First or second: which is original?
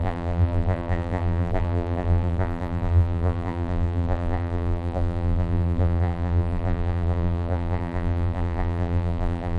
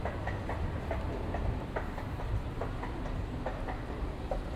second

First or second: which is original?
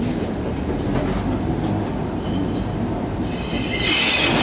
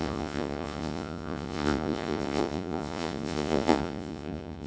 first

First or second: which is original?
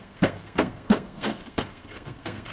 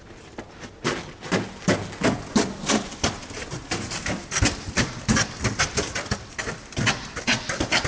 second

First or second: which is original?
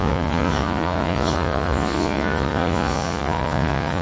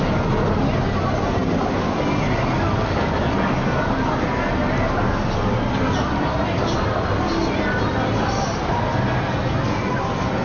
second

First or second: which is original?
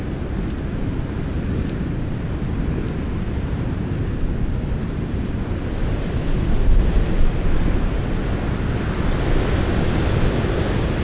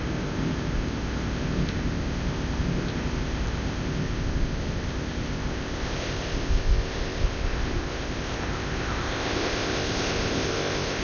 first